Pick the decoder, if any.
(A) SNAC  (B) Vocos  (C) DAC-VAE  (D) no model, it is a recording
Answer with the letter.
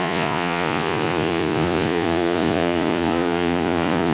B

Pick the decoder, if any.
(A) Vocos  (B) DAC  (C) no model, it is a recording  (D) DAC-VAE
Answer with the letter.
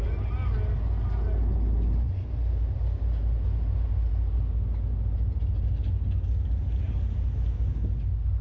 C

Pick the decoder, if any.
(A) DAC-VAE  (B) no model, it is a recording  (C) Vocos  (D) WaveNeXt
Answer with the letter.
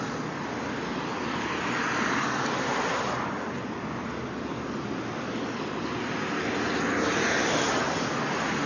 B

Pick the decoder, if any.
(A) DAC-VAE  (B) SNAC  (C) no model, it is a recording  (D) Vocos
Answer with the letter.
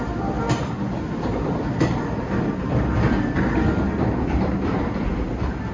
C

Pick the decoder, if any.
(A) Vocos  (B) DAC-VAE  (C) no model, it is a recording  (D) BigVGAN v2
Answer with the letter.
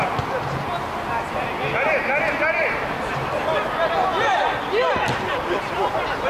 C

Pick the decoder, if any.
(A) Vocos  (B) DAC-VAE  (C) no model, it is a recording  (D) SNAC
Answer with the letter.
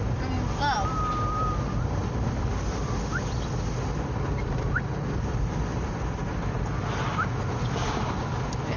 C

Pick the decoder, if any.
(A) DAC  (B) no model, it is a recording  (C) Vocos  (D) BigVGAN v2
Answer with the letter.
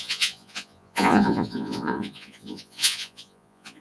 C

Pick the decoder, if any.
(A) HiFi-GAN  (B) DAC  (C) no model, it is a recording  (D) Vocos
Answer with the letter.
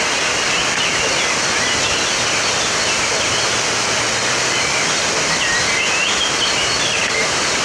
C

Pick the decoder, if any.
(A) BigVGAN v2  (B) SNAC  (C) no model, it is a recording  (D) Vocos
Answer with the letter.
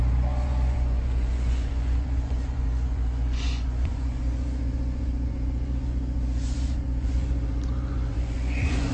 D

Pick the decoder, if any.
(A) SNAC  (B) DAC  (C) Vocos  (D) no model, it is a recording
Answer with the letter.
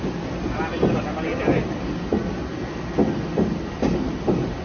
D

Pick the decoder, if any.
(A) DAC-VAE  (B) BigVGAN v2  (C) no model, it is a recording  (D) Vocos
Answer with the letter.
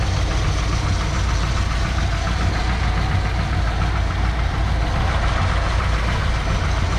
C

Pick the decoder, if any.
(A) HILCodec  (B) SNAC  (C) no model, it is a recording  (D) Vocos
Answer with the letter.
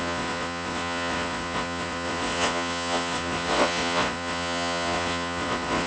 D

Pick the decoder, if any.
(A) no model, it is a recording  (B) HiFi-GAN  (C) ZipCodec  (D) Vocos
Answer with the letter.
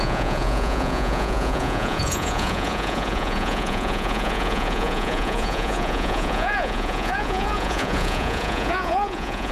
D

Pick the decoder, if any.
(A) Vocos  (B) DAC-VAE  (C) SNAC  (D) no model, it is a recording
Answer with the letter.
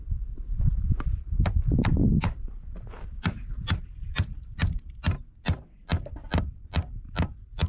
D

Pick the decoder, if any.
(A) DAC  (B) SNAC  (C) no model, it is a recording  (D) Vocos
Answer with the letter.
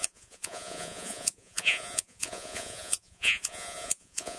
D